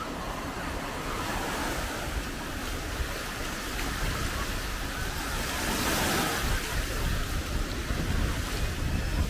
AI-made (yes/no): no